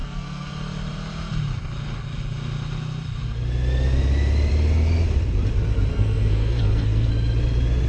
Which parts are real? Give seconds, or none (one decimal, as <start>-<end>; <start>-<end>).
0.5-5.9; 7.1-7.9